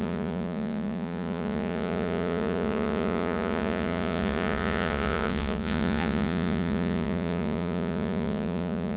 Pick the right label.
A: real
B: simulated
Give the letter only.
B